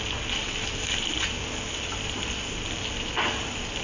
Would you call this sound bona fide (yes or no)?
yes